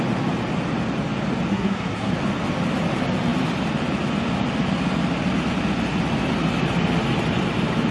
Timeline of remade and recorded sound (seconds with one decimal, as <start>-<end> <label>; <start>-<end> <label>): 0.0-1.5 recorded; 1.5-2.1 remade; 2.1-7.9 recorded